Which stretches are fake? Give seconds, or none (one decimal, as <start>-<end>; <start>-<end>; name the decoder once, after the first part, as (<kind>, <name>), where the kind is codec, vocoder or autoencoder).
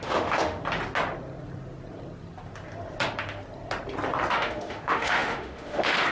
0.0-0.6 (autoencoder, DAC-VAE); 4.3-6.1